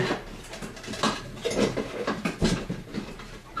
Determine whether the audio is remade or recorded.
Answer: recorded